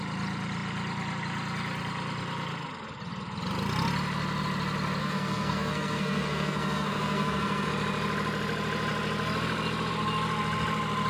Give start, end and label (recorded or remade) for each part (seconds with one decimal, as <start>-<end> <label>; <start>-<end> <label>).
0.0-5.0 recorded; 5.0-7.7 remade; 7.7-11.1 recorded